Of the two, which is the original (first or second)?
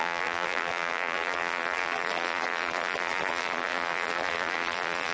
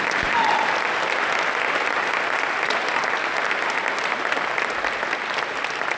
second